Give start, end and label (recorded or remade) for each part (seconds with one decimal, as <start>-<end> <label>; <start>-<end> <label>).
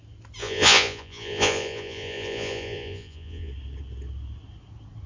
0.0-0.4 recorded; 0.4-3.5 remade; 3.5-5.1 recorded